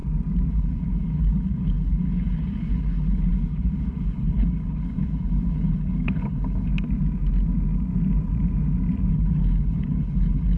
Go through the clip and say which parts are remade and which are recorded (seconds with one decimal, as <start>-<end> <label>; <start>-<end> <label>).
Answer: 0.0-0.5 recorded; 0.5-6.7 remade; 6.7-9.1 recorded; 9.1-10.6 remade

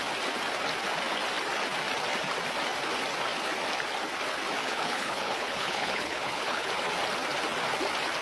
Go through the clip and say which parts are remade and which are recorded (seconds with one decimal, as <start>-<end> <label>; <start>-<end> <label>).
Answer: 0.0-4.6 recorded; 4.6-6.7 remade; 6.7-8.2 recorded

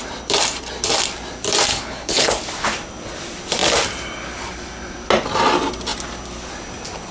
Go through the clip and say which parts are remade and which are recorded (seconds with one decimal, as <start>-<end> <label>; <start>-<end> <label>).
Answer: 0.0-1.7 recorded; 1.7-2.3 remade; 2.3-7.1 recorded

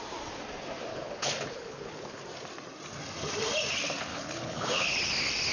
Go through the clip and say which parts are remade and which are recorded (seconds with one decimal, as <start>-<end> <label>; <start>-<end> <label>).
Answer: 0.0-0.9 recorded; 0.9-2.2 remade; 2.2-4.1 recorded; 4.1-5.0 remade; 5.0-5.5 recorded

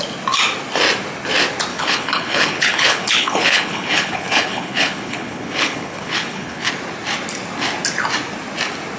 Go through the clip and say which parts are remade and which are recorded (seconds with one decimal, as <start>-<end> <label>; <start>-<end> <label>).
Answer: 0.0-1.7 recorded; 1.7-6.7 remade; 6.7-9.0 recorded